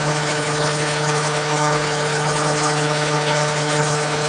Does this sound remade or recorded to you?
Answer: remade